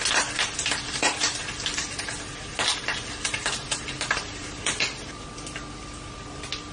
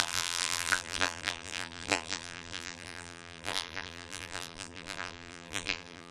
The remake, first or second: second